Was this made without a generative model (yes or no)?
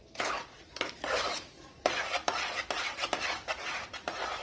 no